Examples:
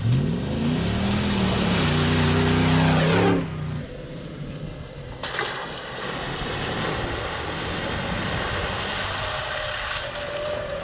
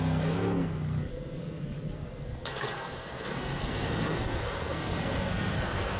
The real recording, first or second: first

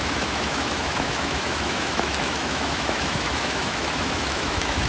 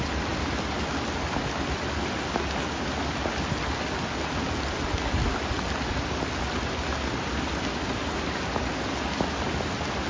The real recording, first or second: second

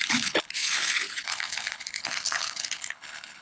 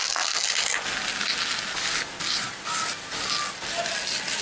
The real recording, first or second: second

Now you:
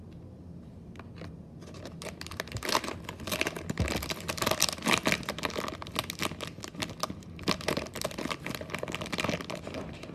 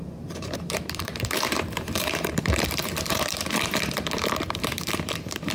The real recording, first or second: first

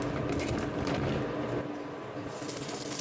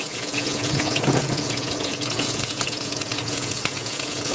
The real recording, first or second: first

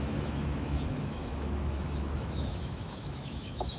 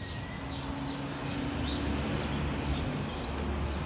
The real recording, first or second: second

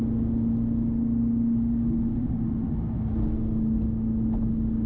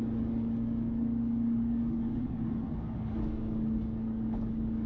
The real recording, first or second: first